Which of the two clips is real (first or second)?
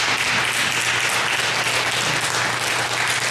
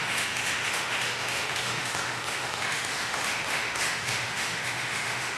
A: first